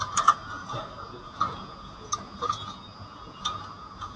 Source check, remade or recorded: remade